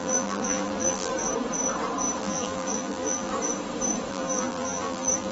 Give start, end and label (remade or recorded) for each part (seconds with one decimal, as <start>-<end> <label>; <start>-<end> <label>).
0.0-1.1 remade; 1.1-2.2 recorded; 2.2-3.3 remade; 3.3-4.1 recorded; 4.1-5.3 remade